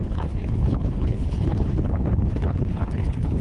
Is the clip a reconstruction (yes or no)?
yes